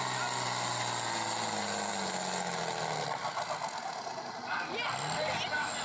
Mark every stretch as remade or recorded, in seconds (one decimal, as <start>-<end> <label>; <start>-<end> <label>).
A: 0.0-5.8 recorded